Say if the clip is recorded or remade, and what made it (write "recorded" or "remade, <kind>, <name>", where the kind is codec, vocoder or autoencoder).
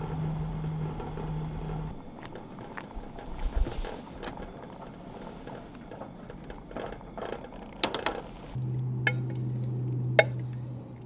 recorded